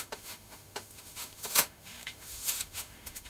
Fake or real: fake